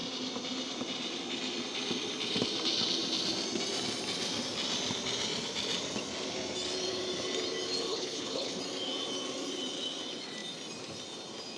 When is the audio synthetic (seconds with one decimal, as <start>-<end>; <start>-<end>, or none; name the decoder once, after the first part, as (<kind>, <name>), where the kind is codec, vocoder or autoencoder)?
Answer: 7.9-8.6 (codec, HILCodec)